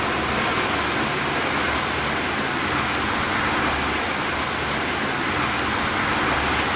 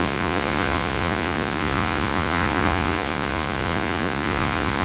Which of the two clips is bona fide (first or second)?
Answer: first